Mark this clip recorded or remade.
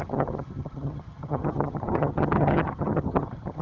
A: remade